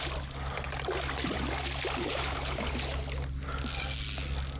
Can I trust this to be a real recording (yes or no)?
yes